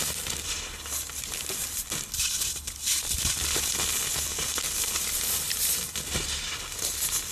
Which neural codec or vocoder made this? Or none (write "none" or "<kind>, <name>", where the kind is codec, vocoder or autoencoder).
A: vocoder, BigVGAN v2